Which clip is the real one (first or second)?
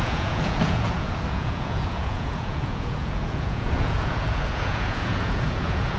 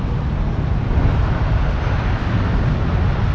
second